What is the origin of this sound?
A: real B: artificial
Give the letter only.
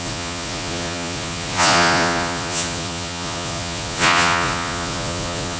B